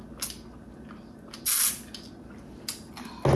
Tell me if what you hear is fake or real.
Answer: real